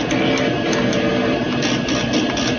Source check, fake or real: real